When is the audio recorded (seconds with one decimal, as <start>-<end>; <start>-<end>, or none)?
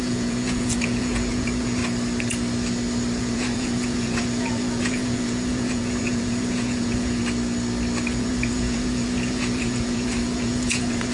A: 1.8-3.2; 7.2-8.1